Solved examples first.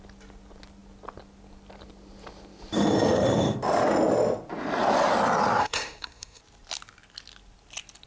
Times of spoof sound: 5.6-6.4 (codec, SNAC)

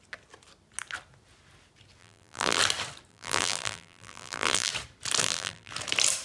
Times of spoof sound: 2.0-2.6 (vocoder, BigVGAN v2); 3.1-4.7; 5.2-5.7

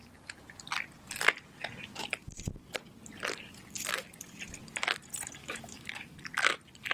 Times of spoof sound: 5.4-6.2 (autoencoder, DAC-VAE)

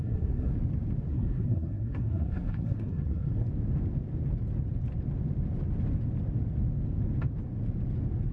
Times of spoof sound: 0.0-0.5 (codec, SNAC); 1.1-3.5